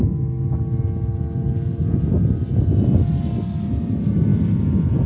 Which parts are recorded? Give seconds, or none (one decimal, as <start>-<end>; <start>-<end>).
0.0-5.1